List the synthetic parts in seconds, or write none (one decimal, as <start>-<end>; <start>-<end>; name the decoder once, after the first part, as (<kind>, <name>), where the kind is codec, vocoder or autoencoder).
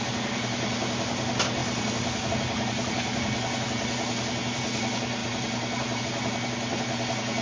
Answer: 5.2-6.0 (vocoder, BigVGAN v2)